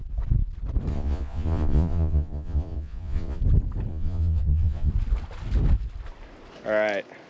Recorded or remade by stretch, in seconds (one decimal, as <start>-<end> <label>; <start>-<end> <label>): 0.0-0.9 recorded; 0.9-3.4 remade; 3.4-3.9 recorded; 3.9-4.9 remade; 4.9-7.3 recorded

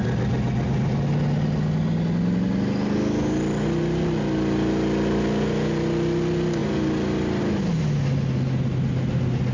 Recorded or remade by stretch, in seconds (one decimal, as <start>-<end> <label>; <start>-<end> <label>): 0.0-9.5 recorded